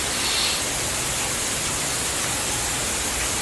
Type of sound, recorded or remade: recorded